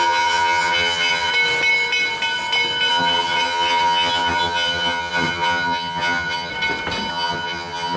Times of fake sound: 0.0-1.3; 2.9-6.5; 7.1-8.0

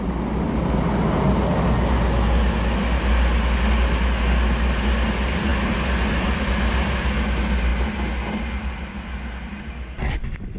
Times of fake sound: none